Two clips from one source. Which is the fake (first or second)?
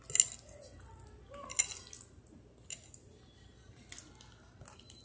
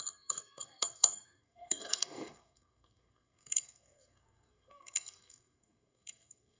second